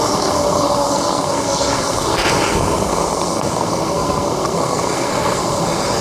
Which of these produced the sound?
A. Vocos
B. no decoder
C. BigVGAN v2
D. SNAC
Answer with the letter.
D